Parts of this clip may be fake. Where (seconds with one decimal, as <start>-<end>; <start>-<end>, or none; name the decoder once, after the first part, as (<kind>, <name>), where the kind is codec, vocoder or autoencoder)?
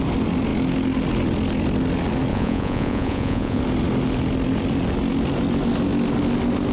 2.3-3.6 (vocoder, Vocos)